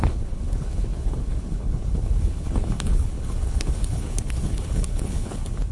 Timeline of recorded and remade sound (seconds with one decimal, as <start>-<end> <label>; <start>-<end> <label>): 0.0-5.7 remade